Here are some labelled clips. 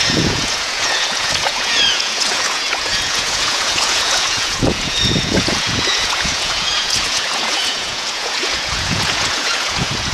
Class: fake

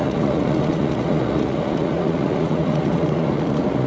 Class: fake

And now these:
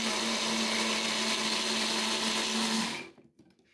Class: real